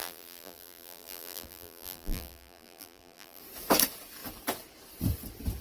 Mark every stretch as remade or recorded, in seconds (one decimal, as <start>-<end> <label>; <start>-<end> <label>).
0.0-3.4 remade; 3.4-5.6 recorded